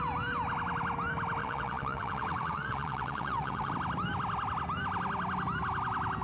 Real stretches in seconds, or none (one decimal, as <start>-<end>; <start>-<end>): 0.0-1.4; 3.7-6.2